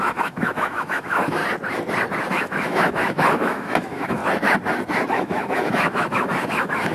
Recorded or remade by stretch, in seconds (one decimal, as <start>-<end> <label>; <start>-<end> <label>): 0.0-1.4 remade; 1.4-2.3 recorded; 2.3-4.2 remade; 4.2-5.1 recorded; 5.1-6.9 remade